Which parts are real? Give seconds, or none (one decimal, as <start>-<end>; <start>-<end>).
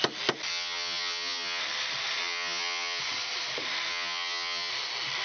0.0-0.5; 1.6-2.2; 3.0-3.9; 4.7-5.2